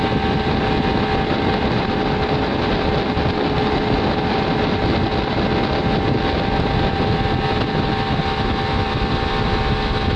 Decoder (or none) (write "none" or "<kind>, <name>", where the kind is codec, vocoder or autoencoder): none